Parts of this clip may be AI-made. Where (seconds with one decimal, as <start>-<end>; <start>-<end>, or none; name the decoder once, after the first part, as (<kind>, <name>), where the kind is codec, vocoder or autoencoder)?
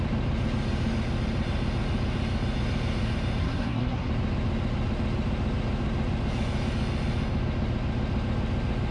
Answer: 3.4-4.1 (codec, SNAC)